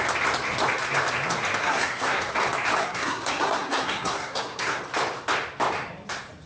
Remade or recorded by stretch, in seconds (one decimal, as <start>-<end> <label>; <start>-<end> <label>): 0.0-1.6 recorded; 1.6-2.3 remade; 2.3-2.8 recorded; 2.8-4.8 remade; 4.8-6.5 recorded